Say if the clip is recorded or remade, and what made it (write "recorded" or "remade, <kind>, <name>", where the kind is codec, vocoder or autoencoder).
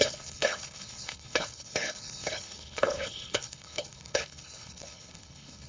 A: remade, codec, HILCodec